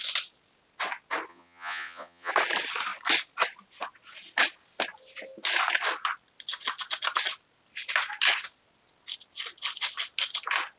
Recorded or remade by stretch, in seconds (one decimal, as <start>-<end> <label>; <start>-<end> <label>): 0.0-1.3 recorded; 1.3-2.3 remade; 2.3-10.8 recorded